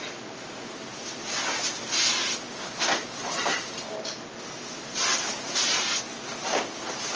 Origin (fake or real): real